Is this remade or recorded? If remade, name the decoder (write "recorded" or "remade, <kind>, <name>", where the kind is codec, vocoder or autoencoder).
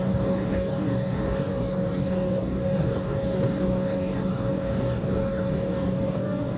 remade, codec, DAC